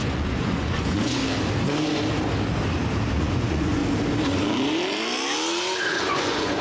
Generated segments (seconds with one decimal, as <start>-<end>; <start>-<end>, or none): 0.0-1.2; 3.2-3.8; 5.9-6.6